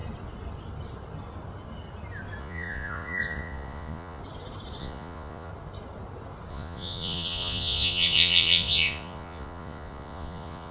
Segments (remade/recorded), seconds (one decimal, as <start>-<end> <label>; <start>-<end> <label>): 0.0-2.4 recorded; 2.4-4.2 remade; 4.2-4.8 recorded; 4.8-5.5 remade; 5.5-6.5 recorded; 6.5-10.7 remade